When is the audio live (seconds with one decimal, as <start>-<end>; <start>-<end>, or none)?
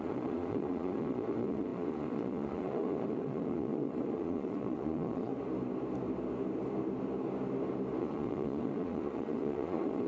5.3-8.0